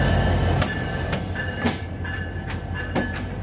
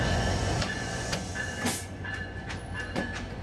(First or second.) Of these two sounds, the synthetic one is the second